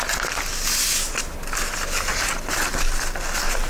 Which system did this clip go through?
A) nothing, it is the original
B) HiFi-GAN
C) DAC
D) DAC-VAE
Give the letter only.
A